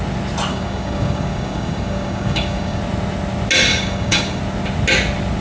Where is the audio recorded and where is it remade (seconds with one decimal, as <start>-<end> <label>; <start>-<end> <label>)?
0.0-0.5 recorded; 0.5-2.8 remade; 2.8-3.7 recorded; 3.7-4.4 remade; 4.4-5.4 recorded